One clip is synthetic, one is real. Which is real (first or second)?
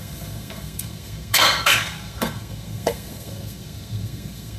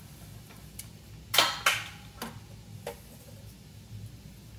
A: second